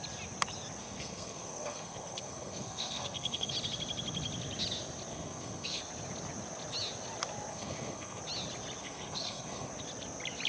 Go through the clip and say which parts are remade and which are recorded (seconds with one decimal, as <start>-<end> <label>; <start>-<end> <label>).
0.0-0.8 recorded; 0.8-3.5 remade; 3.5-5.1 recorded; 5.1-5.8 remade; 5.8-7.5 recorded; 7.5-8.2 remade; 8.2-8.8 recorded; 8.8-9.7 remade; 9.7-10.5 recorded